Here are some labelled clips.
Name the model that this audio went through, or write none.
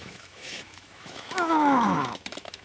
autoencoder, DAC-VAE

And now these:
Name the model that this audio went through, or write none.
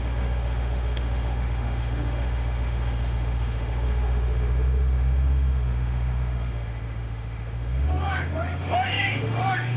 autoencoder, DAC-VAE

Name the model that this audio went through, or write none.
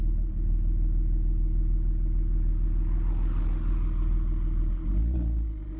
none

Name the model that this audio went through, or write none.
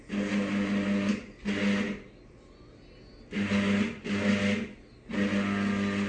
none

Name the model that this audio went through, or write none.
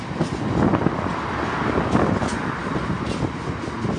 none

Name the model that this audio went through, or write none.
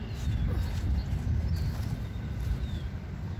none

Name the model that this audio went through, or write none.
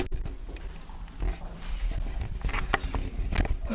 none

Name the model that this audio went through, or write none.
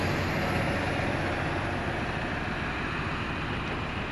none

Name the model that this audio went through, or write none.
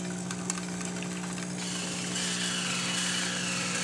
none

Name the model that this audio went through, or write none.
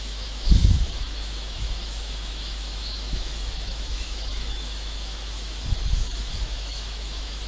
autoencoder, DAC-VAE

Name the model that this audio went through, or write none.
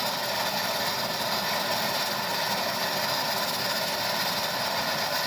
none